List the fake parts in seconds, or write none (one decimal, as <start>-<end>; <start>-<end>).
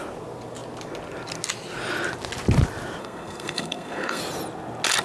3.0-4.2